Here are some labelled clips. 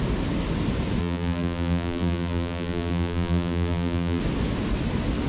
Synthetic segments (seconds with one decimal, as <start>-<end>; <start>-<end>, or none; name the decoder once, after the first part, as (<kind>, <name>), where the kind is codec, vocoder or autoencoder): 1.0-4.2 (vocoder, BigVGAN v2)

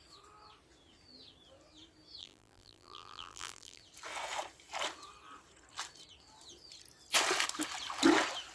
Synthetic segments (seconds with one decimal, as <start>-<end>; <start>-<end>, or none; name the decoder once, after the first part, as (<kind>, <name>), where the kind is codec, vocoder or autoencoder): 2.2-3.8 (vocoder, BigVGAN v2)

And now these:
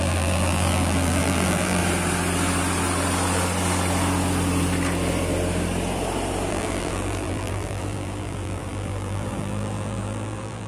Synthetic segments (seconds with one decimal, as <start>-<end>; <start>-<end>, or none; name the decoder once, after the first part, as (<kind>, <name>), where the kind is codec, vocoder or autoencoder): 0.0-1.8 (vocoder, BigVGAN v2); 6.5-10.7

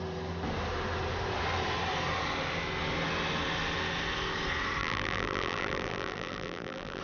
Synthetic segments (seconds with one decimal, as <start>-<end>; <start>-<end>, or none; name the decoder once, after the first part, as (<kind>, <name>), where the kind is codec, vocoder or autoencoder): 4.8-7.0 (vocoder, BigVGAN v2)

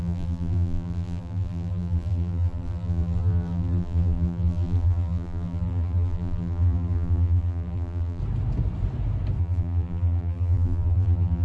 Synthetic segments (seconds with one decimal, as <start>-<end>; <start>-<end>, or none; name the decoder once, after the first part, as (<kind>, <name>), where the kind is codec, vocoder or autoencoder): 0.0-8.2 (vocoder, BigVGAN v2); 9.4-11.4

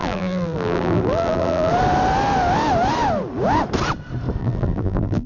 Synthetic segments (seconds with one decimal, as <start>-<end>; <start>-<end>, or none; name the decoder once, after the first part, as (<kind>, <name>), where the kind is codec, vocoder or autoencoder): 0.0-1.7 (vocoder, BigVGAN v2); 4.4-5.3